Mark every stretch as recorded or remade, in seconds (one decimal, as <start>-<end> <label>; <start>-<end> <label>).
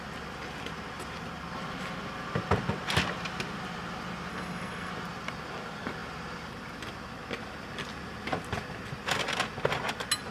0.0-4.3 recorded; 4.3-4.9 remade; 4.9-10.3 recorded